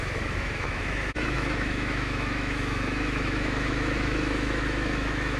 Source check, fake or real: fake